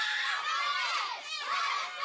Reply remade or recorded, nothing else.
remade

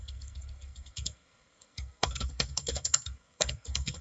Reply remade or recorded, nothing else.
remade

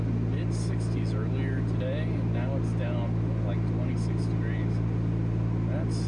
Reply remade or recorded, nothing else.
recorded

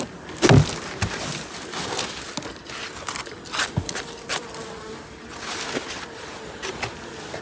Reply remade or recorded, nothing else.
recorded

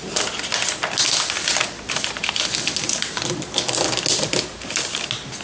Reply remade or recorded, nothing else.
recorded